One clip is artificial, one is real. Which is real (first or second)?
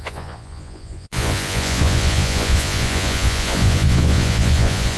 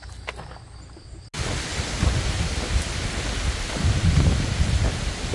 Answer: second